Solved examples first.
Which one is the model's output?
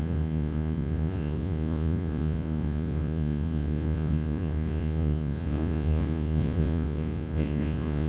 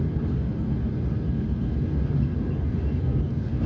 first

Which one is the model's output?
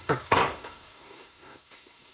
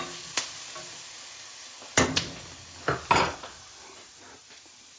first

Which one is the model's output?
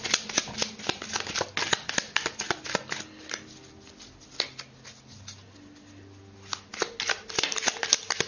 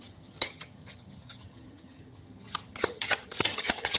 second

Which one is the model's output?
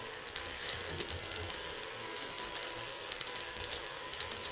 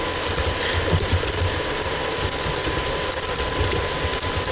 first